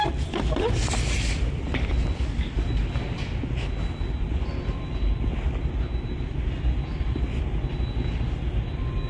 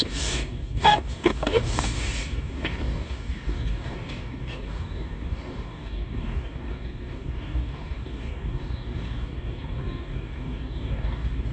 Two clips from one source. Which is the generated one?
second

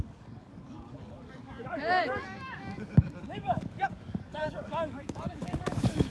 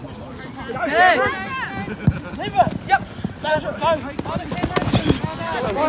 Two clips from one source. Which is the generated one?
first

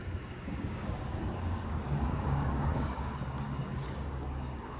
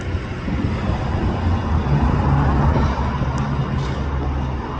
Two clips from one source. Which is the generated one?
first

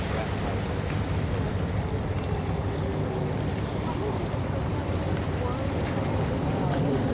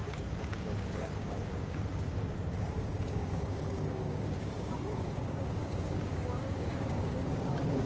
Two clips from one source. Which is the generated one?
second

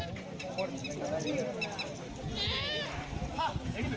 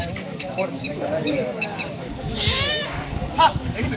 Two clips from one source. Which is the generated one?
second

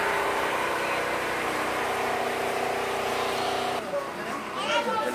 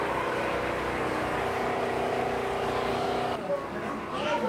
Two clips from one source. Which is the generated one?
second